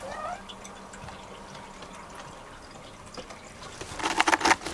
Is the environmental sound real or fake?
real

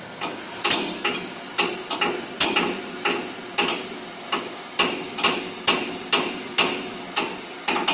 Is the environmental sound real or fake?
real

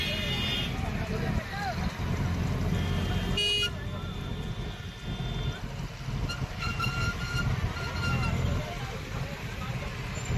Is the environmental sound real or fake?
real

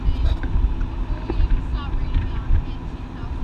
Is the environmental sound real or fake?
real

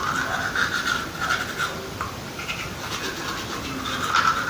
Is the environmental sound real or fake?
real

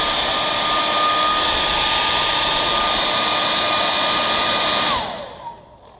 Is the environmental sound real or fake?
real